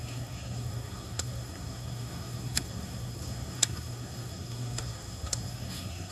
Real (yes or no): no